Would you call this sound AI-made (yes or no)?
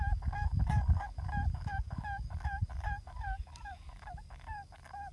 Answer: yes